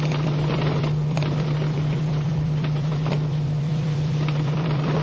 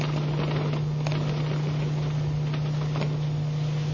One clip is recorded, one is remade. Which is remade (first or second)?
first